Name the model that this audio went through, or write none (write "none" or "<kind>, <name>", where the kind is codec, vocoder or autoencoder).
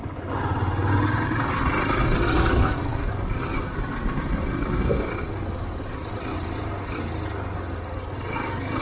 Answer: none